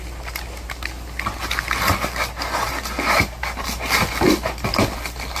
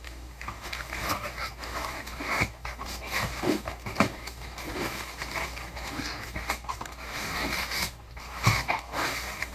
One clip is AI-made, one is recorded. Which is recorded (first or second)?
first